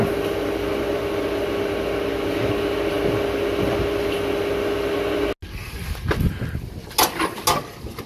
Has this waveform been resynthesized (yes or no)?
no